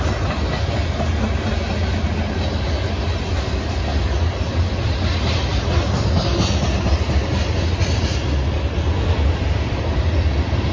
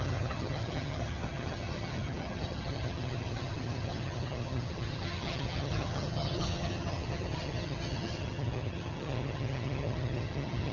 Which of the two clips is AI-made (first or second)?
second